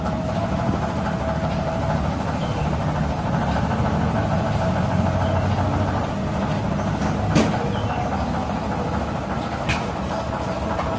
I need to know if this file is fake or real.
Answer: real